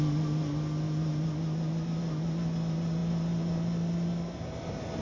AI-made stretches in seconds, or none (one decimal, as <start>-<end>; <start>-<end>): none

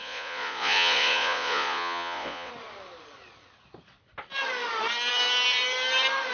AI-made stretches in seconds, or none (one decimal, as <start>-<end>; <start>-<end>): 0.0-2.5

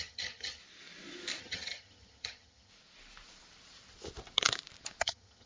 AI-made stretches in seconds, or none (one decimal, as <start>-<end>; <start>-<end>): 0.0-0.6; 1.4-2.7; 5.0-5.5

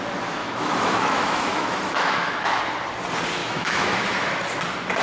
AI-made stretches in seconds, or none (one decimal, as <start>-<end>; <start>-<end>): 0.4-2.6; 3.4-4.4

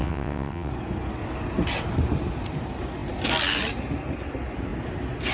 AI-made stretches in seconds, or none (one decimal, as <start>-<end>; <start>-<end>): 0.0-0.7

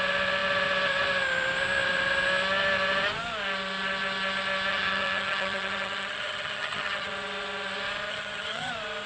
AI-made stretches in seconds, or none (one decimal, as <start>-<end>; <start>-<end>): 4.7-7.1; 8.1-8.7

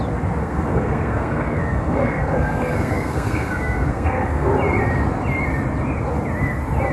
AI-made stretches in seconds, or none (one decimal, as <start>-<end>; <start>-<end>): 0.4-4.5